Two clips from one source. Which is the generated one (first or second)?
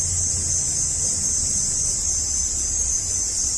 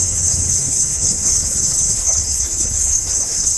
second